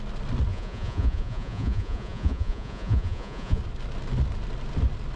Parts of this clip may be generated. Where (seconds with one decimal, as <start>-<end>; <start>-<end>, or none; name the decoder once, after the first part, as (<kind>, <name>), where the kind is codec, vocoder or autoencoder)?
0.5-3.6 (vocoder, Vocos)